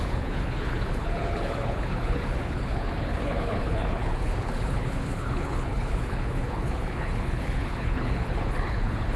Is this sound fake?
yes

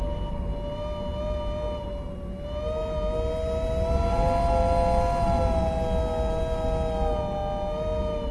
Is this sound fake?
no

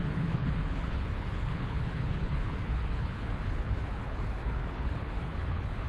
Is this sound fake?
yes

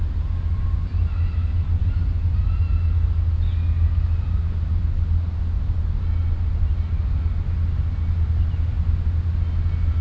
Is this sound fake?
no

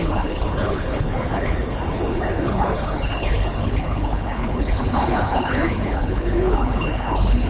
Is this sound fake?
yes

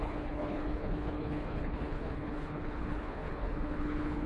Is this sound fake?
yes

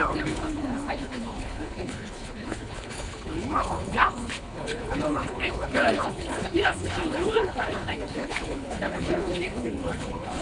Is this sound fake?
yes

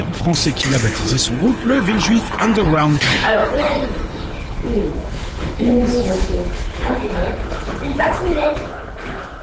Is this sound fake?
yes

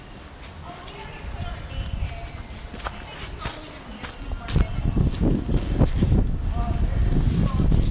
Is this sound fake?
no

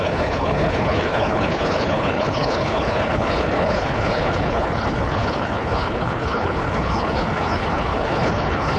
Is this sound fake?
yes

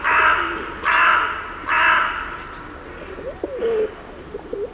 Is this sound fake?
no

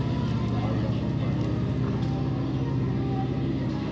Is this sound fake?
no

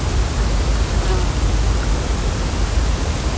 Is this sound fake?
no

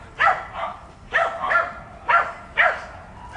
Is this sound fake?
no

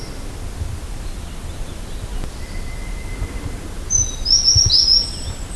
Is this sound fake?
no